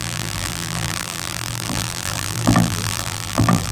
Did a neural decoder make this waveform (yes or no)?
yes